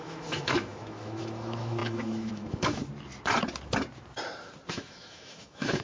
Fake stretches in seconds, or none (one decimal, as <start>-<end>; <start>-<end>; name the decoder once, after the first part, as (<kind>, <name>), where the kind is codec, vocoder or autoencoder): 0.0-2.8 (autoencoder, DAC-VAE); 4.7-5.8